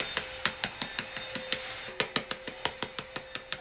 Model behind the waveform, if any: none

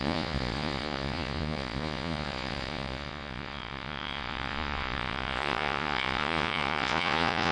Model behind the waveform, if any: vocoder, Vocos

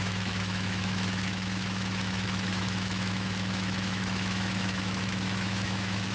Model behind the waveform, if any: autoencoder, DAC-VAE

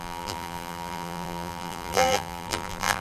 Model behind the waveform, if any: vocoder, BigVGAN v2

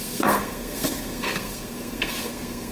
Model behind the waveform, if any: codec, SNAC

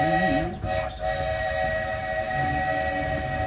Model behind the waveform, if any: none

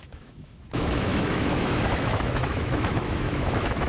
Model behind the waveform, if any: autoencoder, DAC-VAE